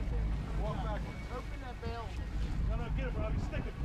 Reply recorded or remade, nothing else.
recorded